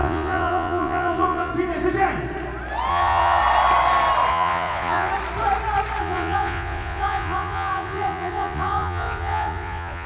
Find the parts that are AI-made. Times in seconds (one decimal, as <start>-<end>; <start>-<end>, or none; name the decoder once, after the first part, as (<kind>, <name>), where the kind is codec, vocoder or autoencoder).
0.0-1.5 (vocoder, Vocos); 2.9-3.4; 4.3-5.1; 6.0-10.1